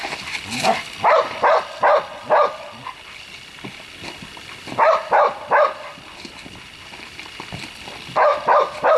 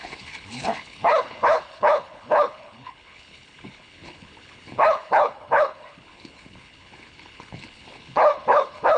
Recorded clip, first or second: first